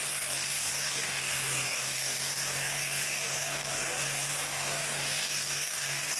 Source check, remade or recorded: remade